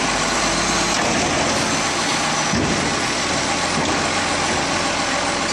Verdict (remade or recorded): recorded